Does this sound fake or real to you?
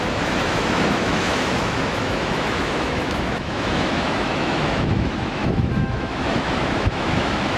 fake